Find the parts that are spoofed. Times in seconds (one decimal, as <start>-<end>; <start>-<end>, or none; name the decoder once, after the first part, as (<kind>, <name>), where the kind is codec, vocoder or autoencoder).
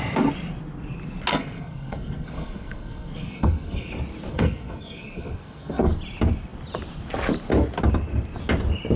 1.3-3.9 (codec, SNAC); 4.3-5.9